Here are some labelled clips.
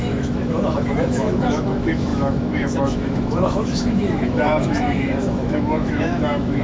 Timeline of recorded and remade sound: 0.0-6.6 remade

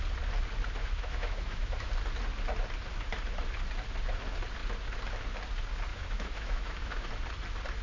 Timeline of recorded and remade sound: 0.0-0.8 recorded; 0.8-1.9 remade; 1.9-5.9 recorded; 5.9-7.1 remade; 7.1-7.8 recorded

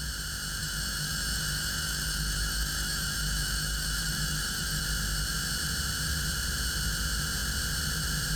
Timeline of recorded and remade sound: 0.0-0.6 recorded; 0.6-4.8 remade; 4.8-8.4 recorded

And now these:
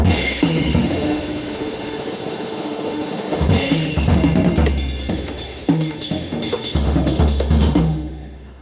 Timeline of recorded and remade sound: 0.0-4.1 remade; 4.1-5.1 recorded; 5.1-8.6 remade

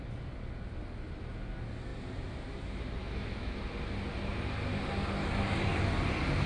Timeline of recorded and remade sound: 0.0-3.0 recorded; 3.0-3.6 remade; 3.6-6.5 recorded

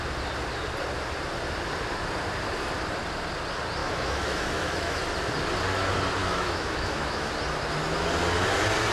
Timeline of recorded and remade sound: 0.0-3.8 recorded; 3.8-5.0 remade; 5.0-6.2 recorded; 6.2-7.3 remade; 7.3-8.9 recorded